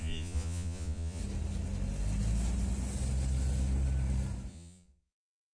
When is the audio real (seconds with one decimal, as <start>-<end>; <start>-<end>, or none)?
1.2-4.5